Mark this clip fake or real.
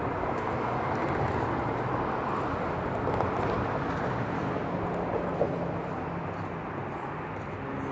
real